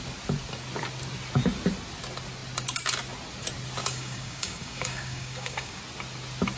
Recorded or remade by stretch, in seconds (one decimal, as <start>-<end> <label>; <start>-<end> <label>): 0.0-3.8 recorded; 3.8-5.8 remade; 5.8-6.6 recorded